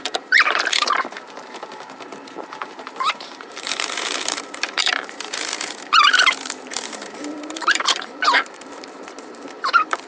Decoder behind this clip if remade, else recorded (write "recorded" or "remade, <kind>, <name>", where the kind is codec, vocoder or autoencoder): remade, vocoder, BigVGAN v2